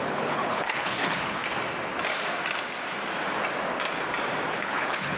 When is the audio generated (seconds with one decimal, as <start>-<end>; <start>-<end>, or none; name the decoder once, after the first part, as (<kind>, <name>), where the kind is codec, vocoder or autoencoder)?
0.0-1.4 (codec, HILCodec); 4.5-5.2